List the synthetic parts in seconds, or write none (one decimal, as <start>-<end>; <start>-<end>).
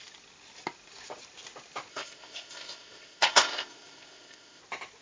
1.9-4.6